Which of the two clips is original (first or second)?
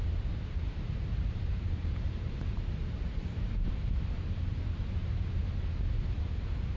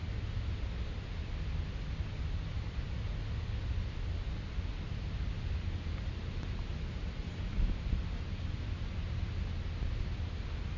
second